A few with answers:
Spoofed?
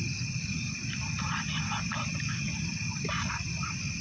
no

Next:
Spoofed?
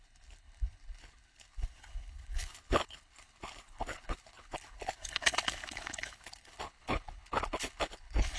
yes